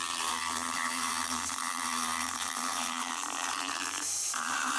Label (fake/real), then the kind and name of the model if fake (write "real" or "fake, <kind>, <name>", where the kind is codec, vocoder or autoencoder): fake, vocoder, BigVGAN v2